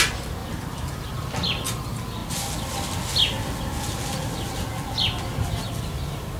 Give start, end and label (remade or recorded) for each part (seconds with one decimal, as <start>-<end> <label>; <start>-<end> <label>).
0.0-0.4 recorded; 0.4-1.3 remade; 1.3-6.4 recorded